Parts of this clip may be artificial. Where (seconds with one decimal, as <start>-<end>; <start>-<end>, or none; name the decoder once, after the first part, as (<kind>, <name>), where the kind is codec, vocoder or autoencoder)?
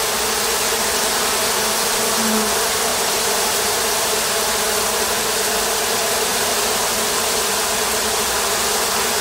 2.9-4.2 (vocoder, BigVGAN v2); 6.3-6.9